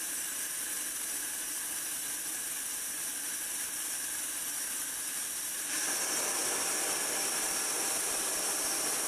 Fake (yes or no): no